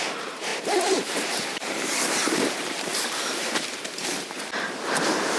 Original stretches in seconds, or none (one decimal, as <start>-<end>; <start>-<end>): none